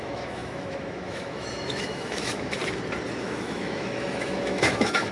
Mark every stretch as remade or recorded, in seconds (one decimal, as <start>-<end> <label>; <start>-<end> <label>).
0.0-2.6 remade; 2.6-3.2 recorded; 3.2-5.1 remade